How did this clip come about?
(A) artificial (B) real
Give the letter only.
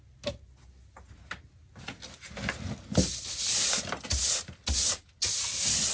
B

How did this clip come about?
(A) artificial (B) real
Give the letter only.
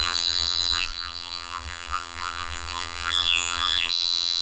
A